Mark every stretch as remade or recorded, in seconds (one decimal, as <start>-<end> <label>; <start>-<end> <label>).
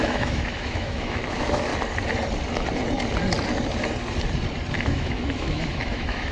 0.0-1.7 remade; 1.7-4.7 recorded; 4.7-6.3 remade